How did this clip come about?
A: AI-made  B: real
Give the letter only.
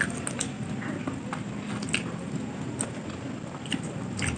B